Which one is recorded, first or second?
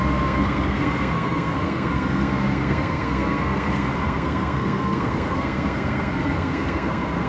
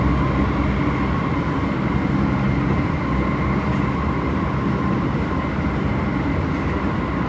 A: second